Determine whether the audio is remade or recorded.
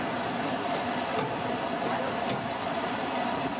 remade